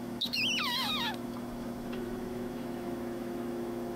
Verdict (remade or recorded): remade